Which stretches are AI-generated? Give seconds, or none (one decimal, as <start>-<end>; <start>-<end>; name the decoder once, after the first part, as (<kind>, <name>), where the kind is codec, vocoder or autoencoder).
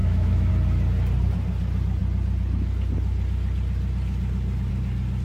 0.0-0.5 (autoencoder, DAC-VAE)